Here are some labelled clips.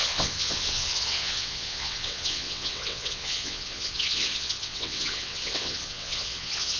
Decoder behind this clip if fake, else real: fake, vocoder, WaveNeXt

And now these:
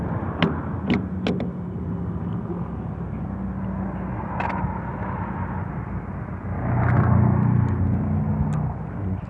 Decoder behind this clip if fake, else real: real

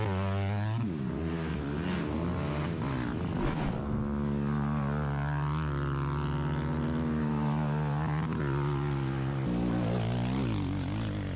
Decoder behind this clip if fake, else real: real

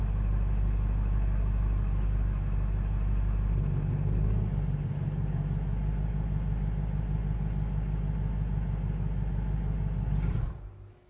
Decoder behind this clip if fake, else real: real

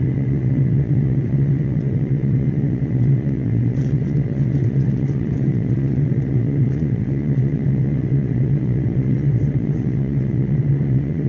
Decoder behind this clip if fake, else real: fake, vocoder, WaveNeXt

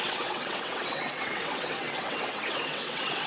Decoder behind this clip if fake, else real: fake, vocoder, WaveNeXt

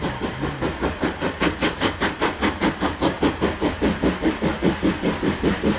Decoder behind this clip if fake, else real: real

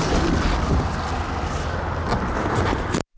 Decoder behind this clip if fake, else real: real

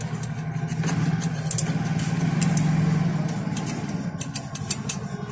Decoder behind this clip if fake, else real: real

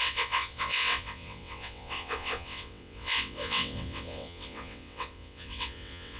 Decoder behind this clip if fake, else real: fake, vocoder, WaveNeXt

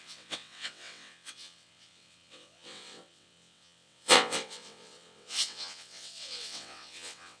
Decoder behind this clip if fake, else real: fake, vocoder, WaveNeXt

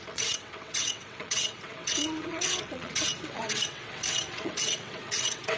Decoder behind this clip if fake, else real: fake, vocoder, WaveNeXt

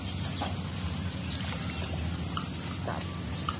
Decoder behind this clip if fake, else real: real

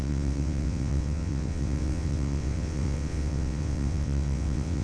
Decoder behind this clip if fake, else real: fake, vocoder, WaveNeXt